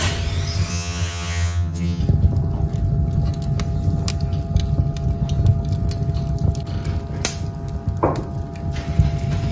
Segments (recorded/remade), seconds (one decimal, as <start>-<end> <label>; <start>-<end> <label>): 0.0-0.7 recorded; 0.7-2.0 remade; 2.0-9.5 recorded